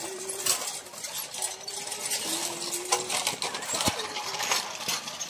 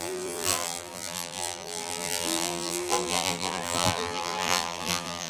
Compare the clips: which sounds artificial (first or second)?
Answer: second